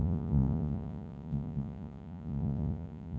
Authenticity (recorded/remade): remade